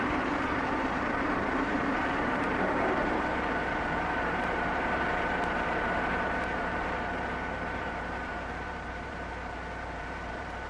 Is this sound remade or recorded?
remade